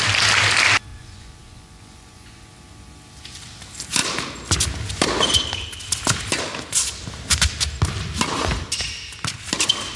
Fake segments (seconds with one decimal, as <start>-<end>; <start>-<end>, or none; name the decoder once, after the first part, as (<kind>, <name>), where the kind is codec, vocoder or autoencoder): 0.9-2.5 (vocoder, Vocos)